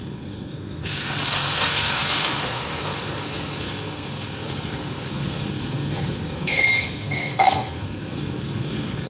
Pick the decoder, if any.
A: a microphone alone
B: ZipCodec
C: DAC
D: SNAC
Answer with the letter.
D